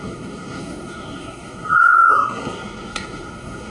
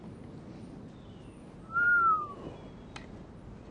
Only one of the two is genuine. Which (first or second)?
second